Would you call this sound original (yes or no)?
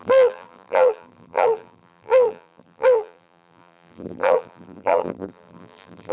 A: no